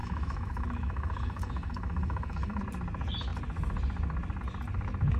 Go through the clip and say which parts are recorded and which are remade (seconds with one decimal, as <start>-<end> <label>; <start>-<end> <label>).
0.0-2.6 remade; 2.6-5.2 recorded